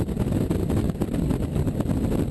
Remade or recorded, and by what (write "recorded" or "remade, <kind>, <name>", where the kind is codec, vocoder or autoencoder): recorded